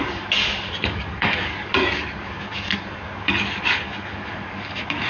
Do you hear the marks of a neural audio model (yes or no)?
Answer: yes